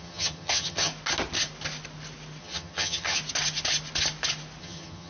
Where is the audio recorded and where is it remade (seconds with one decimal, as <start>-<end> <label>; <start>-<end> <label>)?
0.0-0.9 remade; 0.9-2.4 recorded; 2.4-3.2 remade; 3.2-4.6 recorded; 4.6-5.1 remade

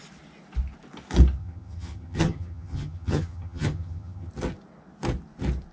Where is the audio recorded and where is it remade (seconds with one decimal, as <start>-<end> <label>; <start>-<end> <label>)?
0.0-1.4 recorded; 1.4-4.3 remade; 4.3-5.7 recorded

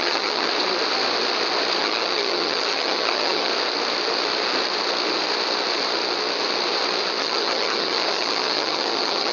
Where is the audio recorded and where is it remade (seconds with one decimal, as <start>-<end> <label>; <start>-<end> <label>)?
0.0-0.5 remade; 0.5-1.8 recorded; 1.8-3.5 remade; 3.5-7.2 recorded; 7.2-9.3 remade